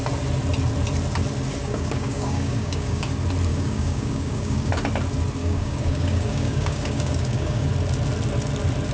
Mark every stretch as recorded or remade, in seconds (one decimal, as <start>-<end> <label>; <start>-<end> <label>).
0.0-1.6 recorded; 1.6-3.1 remade; 3.1-3.5 recorded; 3.5-4.7 remade; 4.7-5.4 recorded; 5.4-7.7 remade; 7.7-8.9 recorded